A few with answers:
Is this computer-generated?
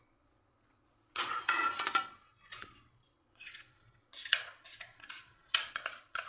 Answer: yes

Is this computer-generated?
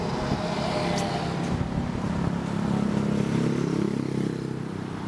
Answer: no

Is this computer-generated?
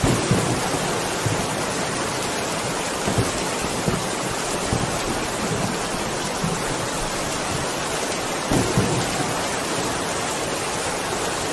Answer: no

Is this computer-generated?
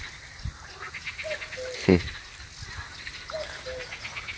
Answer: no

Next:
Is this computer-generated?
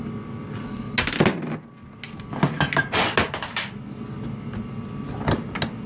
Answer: no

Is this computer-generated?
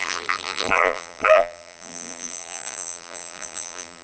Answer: yes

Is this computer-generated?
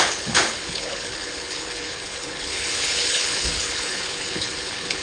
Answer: yes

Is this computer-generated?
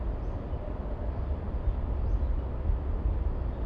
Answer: no